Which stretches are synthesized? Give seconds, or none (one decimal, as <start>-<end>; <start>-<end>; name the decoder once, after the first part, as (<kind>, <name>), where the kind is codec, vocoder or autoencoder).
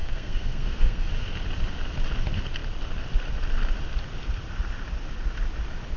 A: 0.0-1.1 (codec, SNAC)